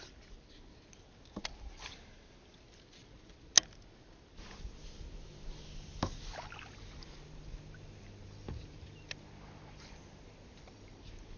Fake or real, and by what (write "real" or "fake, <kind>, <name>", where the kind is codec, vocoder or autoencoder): real